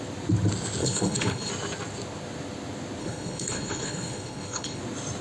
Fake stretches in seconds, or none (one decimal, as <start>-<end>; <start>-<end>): 0.8-1.5; 3.0-4.8